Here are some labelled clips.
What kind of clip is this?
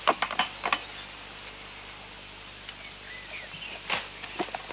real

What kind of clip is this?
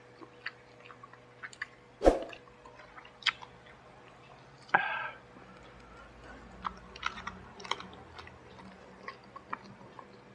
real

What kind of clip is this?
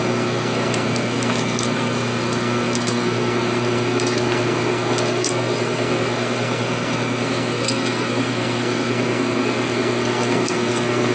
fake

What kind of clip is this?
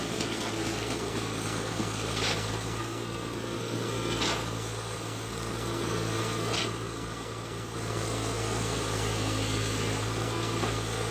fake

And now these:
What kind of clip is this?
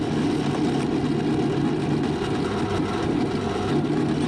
real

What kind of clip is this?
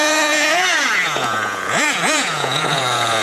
fake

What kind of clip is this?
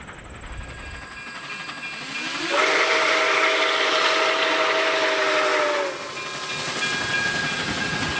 real